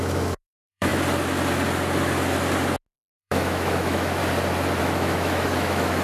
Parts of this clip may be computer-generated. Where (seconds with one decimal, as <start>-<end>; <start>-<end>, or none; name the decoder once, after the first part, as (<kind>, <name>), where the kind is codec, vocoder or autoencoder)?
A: 0.0-0.9 (autoencoder, DAC-VAE); 3.1-4.2; 4.8-6.0